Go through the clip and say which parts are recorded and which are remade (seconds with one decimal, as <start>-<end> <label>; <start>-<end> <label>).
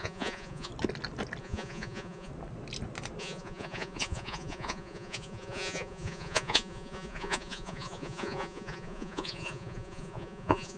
0.0-0.7 remade; 0.7-1.4 recorded; 1.4-2.3 remade; 2.3-3.2 recorded; 3.2-10.8 remade